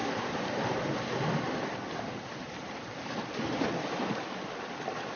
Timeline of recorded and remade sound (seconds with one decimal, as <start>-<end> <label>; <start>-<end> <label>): 0.0-5.2 remade